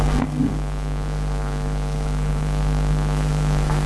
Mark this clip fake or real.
fake